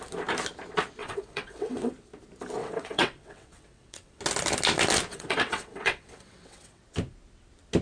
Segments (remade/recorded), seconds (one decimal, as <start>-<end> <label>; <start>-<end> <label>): 0.0-1.0 recorded; 1.0-1.9 remade; 1.9-2.6 recorded; 2.6-4.2 remade; 4.2-5.1 recorded; 5.1-6.8 remade; 6.8-7.8 recorded